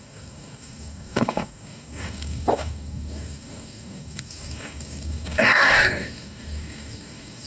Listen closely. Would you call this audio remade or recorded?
remade